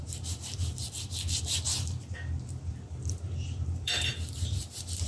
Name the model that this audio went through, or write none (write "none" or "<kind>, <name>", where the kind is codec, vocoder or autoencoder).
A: vocoder, BigVGAN v2